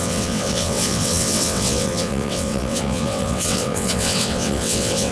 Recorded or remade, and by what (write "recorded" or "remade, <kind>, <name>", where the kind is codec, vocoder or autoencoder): remade, vocoder, WaveNeXt